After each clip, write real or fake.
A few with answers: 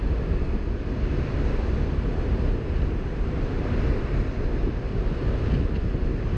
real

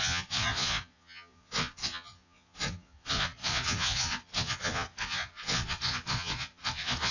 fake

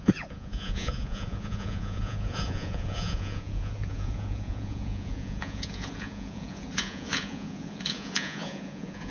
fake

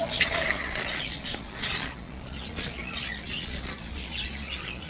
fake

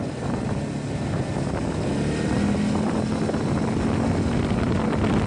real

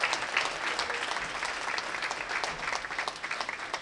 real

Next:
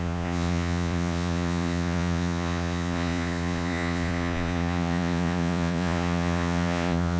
fake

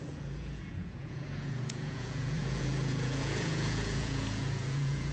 fake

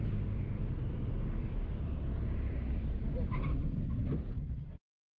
real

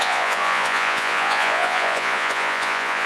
fake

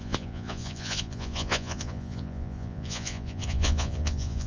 fake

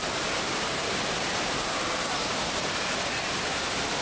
real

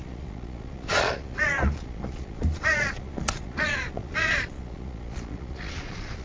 fake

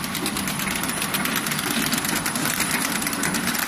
real